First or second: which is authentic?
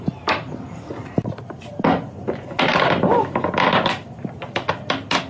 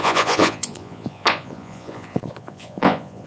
first